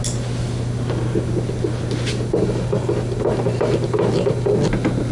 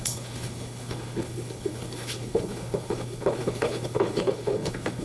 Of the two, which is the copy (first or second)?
second